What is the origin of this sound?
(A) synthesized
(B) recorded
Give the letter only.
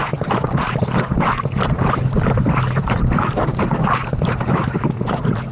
B